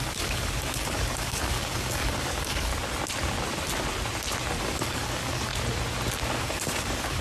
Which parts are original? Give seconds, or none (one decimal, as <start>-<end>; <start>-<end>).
2.7-4.6; 5.5-6.4

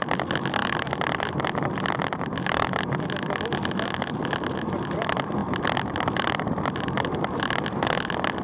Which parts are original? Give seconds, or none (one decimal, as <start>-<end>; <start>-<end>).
0.0-8.4

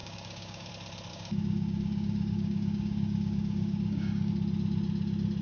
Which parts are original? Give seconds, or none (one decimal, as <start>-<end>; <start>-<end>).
0.7-1.1; 4.3-5.4

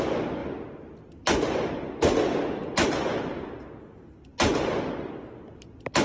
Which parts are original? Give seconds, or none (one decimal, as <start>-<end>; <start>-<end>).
0.0-6.0

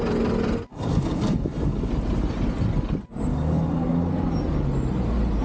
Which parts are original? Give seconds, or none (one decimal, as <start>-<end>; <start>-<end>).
0.0-0.7; 1.9-3.3; 4.1-5.4

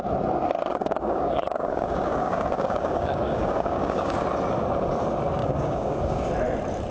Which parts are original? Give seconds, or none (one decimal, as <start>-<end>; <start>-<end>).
0.0-0.7; 4.2-5.4; 6.3-6.9